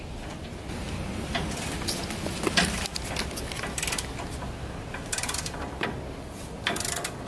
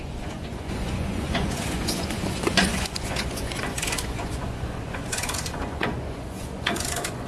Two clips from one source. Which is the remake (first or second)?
second